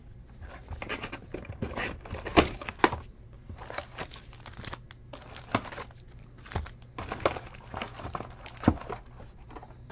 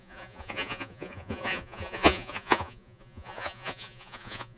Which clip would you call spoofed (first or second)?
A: second